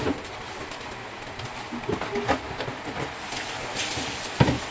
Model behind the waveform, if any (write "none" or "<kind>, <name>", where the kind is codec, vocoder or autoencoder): none